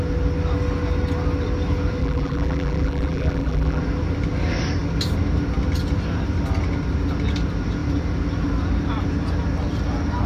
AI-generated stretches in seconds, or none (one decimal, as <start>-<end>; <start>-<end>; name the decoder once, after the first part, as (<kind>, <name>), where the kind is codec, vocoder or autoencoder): 2.0-3.8 (vocoder, BigVGAN v2)